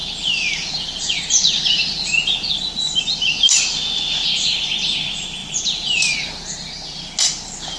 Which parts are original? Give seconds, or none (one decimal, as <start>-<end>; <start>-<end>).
3.0-5.4; 6.3-7.8